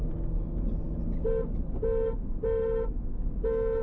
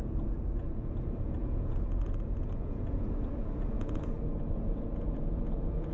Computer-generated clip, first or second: second